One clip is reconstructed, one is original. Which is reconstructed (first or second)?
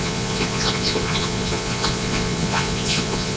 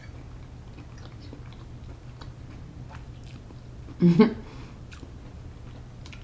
first